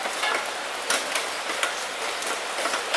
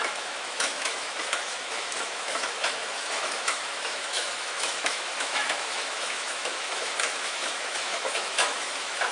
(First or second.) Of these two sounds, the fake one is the second